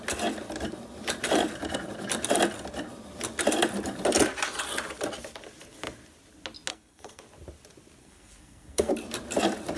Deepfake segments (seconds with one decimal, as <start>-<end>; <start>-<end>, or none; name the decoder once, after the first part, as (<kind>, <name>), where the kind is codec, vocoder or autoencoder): 6.7-7.2 (codec, SNAC); 8.0-8.9

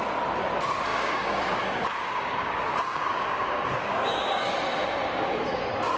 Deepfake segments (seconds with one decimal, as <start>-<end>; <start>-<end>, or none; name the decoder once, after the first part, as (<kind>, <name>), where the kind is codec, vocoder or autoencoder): 0.9-4.5 (codec, DAC); 5.1-5.6

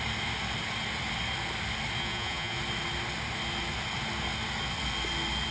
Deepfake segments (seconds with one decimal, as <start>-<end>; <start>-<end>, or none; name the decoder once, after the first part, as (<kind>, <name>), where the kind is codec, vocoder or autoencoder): 2.0-2.6 (vocoder, Vocos)